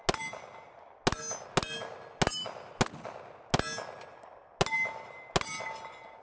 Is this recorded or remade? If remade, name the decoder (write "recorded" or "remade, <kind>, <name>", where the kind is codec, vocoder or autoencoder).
recorded